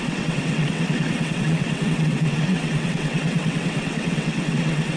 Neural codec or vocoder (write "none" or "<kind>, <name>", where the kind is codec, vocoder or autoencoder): vocoder, WaveNeXt